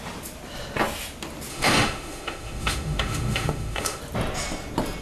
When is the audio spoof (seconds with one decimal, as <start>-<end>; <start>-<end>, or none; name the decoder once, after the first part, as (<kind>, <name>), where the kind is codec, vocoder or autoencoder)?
1.5-4.0 (autoencoder, DAC-VAE)